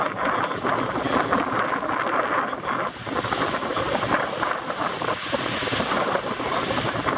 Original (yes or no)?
yes